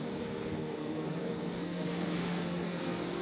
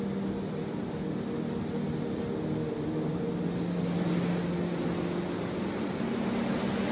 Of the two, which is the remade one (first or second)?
first